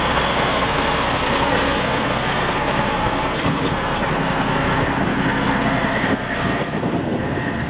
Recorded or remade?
remade